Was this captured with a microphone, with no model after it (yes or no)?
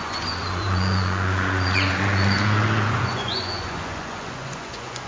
no